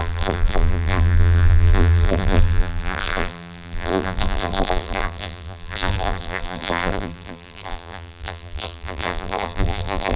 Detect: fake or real fake